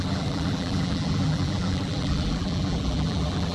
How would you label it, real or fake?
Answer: fake